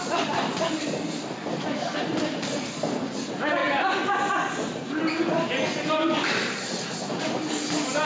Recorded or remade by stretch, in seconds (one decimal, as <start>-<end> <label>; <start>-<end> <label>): 0.0-8.1 recorded